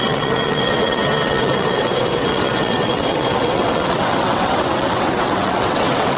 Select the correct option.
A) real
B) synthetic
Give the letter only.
B